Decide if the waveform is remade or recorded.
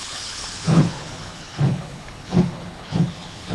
remade